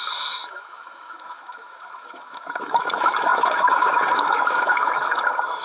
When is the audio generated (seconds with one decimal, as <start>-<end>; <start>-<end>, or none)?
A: 0.0-5.6

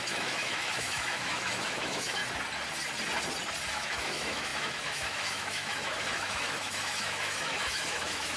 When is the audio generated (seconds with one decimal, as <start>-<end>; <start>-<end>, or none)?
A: 0.0-2.2; 3.7-8.4

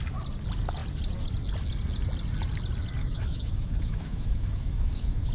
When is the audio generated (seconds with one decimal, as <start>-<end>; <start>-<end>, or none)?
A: 3.0-5.3

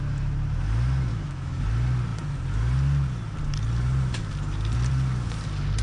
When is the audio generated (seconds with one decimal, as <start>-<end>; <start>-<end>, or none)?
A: 1.1-1.6

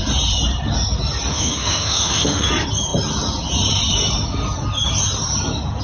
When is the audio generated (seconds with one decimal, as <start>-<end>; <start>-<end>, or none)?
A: 1.3-2.5

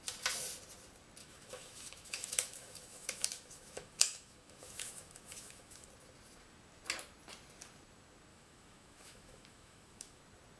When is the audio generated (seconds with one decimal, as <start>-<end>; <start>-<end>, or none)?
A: 1.2-5.9; 8.3-10.2